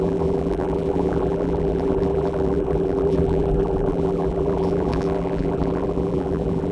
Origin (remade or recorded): remade